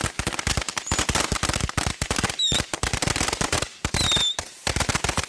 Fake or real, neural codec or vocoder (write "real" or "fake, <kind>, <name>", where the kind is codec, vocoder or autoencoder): fake, vocoder, BigVGAN v2